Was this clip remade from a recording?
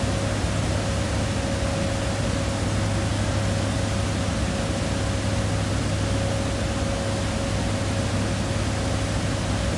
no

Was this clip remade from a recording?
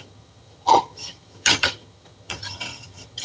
yes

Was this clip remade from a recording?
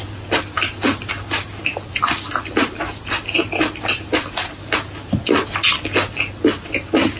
no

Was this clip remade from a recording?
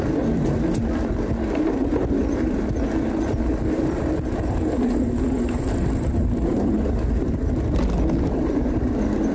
no